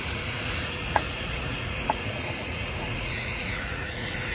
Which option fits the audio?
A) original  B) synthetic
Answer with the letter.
B